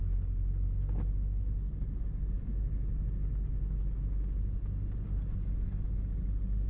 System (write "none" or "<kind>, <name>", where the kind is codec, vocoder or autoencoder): none